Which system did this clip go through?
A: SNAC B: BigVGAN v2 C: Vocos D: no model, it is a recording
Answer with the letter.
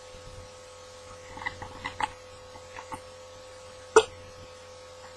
D